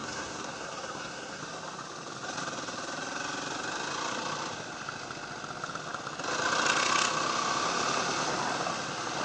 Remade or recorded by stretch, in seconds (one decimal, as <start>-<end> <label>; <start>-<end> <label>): 0.0-1.4 remade; 1.4-9.2 recorded